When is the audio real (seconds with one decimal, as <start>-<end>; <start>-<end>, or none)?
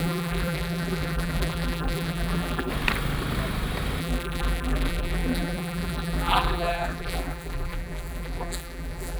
2.7-4.0